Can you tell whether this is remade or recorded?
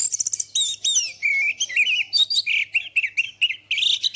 recorded